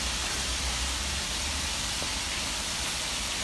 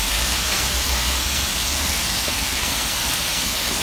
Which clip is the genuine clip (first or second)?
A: first